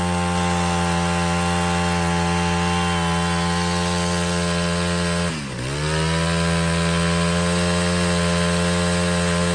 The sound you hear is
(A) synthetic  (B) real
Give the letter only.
B